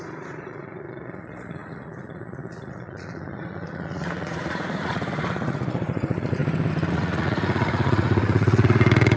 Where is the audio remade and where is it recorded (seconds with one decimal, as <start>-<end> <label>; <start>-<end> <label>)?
0.0-6.4 remade; 6.4-6.9 recorded; 6.9-9.2 remade